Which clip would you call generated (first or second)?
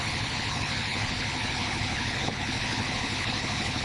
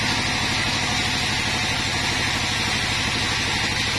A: first